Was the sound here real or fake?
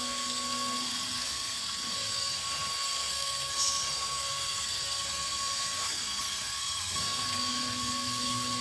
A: fake